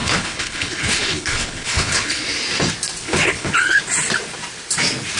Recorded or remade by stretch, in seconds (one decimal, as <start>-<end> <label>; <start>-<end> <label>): 0.0-2.2 remade; 2.2-3.0 recorded; 3.0-3.8 remade; 3.8-5.2 recorded